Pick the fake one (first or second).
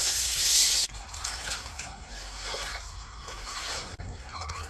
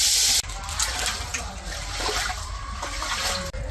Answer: first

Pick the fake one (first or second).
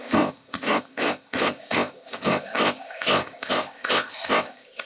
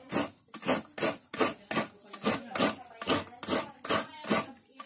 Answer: first